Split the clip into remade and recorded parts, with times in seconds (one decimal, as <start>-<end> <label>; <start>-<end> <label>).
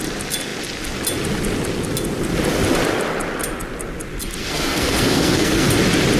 0.0-4.4 recorded; 4.4-5.7 remade; 5.7-6.2 recorded